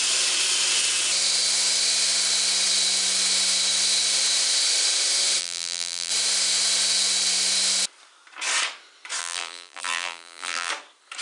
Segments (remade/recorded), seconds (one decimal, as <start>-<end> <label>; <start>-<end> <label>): 0.0-5.4 recorded; 5.4-6.1 remade; 6.1-9.2 recorded; 9.2-10.7 remade; 10.7-11.2 recorded